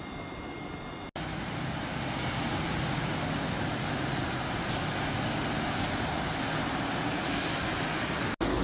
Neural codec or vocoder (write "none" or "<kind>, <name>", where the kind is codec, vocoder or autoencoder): none